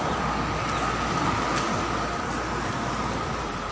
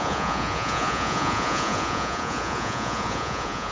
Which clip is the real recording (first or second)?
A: first